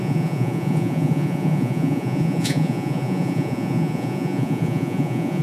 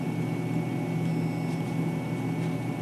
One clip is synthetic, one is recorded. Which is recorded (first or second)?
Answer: second